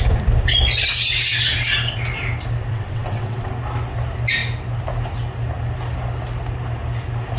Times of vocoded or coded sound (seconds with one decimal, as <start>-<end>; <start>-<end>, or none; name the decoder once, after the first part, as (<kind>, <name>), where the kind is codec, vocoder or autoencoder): 2.7-3.5 (vocoder, WaveNeXt)